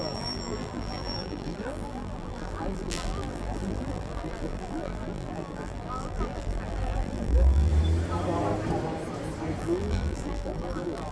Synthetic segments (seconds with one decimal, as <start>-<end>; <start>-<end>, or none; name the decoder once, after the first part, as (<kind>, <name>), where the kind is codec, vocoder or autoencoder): 0.0-7.7 (vocoder, BigVGAN v2); 9.6-11.1